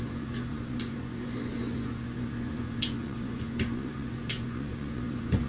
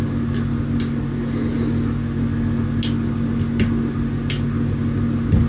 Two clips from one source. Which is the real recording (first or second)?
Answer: second